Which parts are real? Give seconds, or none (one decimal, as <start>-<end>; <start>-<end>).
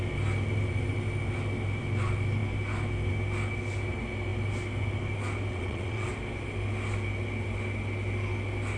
0.0-5.5; 6.1-8.8